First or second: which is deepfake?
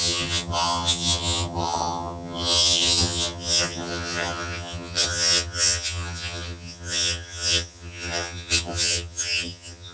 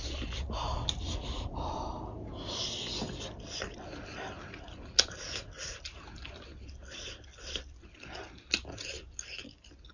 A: first